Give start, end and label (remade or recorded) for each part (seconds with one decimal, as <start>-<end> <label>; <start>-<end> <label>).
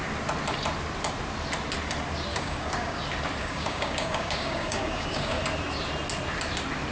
0.0-2.3 recorded; 2.3-3.0 remade; 3.0-3.4 recorded; 3.4-5.4 remade; 5.4-6.9 recorded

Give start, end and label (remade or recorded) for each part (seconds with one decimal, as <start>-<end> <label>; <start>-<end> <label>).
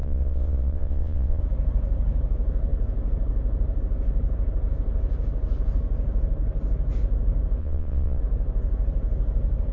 0.0-1.4 remade; 1.4-7.6 recorded; 7.6-8.2 remade; 8.2-9.7 recorded